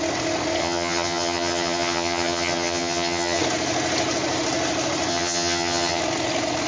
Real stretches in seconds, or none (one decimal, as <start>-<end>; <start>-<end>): 0.0-0.6; 3.4-5.1; 6.0-6.7